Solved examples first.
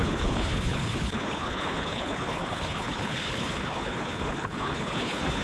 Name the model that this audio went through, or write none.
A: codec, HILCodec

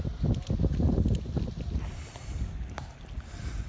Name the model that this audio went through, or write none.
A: none